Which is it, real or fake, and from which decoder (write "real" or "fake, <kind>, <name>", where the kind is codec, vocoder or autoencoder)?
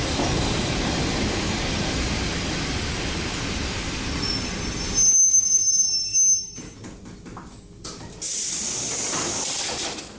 real